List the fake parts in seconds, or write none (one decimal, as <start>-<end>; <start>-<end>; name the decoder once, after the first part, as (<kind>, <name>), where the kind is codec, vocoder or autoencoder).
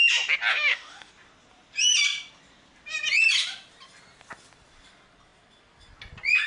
0.5-1.1 (autoencoder, DAC-VAE)